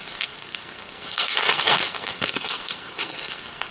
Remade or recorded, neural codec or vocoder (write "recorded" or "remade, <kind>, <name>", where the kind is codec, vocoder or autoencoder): remade, codec, SNAC